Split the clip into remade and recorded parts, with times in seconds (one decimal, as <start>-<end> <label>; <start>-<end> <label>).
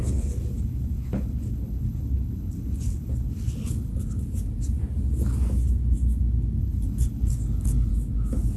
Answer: 0.0-3.9 remade; 3.9-6.6 recorded; 6.6-7.9 remade; 7.9-8.6 recorded